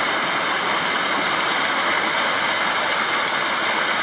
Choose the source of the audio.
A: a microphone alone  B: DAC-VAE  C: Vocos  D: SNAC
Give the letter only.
A